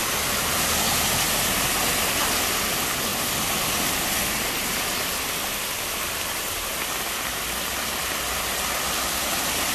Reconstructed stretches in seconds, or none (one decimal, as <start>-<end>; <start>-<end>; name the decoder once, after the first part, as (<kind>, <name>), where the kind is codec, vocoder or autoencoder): none